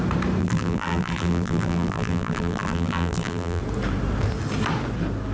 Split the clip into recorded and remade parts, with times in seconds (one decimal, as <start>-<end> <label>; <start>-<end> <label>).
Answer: 0.0-0.4 recorded; 0.4-3.6 remade; 3.6-5.3 recorded